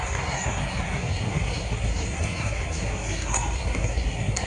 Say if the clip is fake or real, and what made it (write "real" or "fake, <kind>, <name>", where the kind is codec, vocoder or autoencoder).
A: fake, codec, SNAC